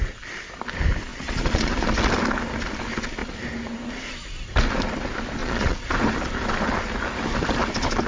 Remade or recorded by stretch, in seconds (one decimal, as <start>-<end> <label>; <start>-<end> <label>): 0.0-1.1 recorded; 1.1-1.7 remade; 1.7-5.4 recorded; 5.4-5.9 remade; 5.9-8.1 recorded